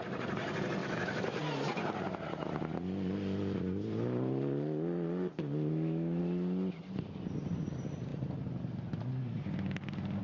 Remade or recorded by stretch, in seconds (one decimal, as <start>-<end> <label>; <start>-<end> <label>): 0.0-0.8 recorded; 0.8-1.4 remade; 1.4-5.7 recorded; 5.7-6.2 remade; 6.2-10.2 recorded